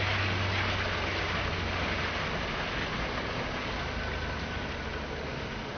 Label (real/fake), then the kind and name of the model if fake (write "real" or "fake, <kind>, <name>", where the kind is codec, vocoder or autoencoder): real